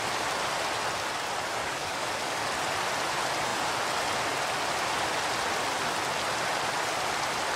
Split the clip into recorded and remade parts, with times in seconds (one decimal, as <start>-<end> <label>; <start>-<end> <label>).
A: 0.0-1.6 recorded; 1.6-2.5 remade; 2.5-7.6 recorded